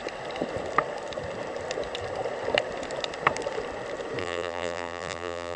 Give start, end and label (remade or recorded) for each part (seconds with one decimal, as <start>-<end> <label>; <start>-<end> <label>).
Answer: 0.0-4.2 recorded; 4.2-5.6 remade